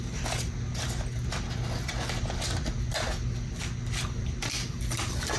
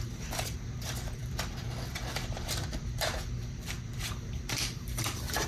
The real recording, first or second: first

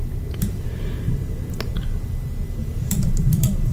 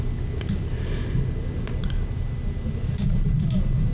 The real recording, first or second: second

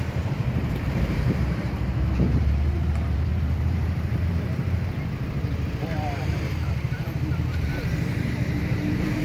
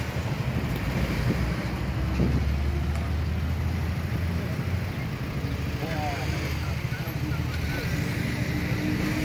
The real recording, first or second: second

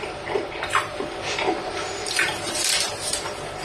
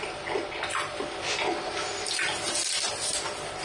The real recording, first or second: second